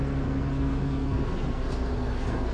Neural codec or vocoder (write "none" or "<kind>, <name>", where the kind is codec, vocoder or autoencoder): codec, SNAC